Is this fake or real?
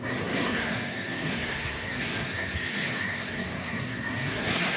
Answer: fake